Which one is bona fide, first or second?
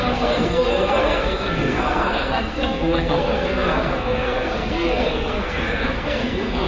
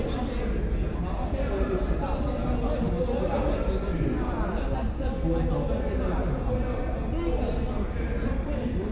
second